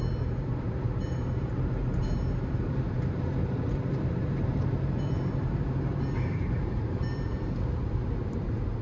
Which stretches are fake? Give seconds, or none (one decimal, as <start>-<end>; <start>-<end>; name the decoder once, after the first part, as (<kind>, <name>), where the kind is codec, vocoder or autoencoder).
0.0-7.3 (vocoder, BigVGAN v2); 8.2-8.8